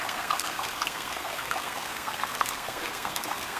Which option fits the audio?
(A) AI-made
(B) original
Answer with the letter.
A